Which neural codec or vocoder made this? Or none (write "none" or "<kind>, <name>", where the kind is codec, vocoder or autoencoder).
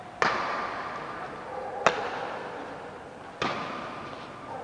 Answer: none